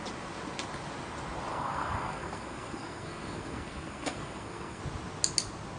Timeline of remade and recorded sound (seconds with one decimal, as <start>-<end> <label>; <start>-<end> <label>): 0.0-1.5 recorded; 1.5-4.8 remade; 4.8-5.8 recorded